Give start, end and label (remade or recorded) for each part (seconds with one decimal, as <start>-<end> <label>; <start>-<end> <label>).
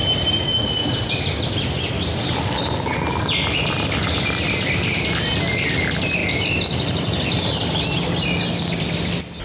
0.0-9.4 recorded